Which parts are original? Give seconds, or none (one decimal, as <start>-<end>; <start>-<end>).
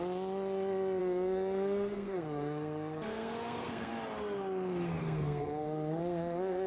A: 0.0-1.0; 3.9-5.0